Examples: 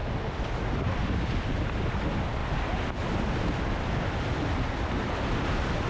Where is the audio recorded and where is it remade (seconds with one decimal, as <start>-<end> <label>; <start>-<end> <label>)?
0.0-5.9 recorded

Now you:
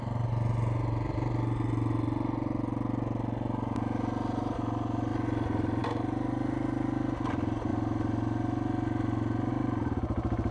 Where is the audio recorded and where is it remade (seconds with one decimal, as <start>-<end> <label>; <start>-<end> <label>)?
0.0-10.5 recorded

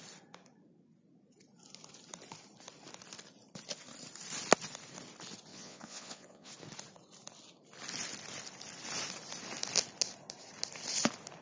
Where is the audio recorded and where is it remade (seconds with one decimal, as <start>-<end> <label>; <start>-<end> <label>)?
0.0-5.5 recorded; 5.5-6.5 remade; 6.5-11.4 recorded